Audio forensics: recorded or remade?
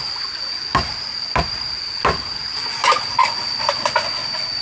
recorded